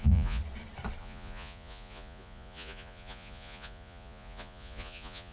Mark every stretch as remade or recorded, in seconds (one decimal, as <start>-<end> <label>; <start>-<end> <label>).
0.0-0.4 remade; 0.4-1.0 recorded; 1.0-5.3 remade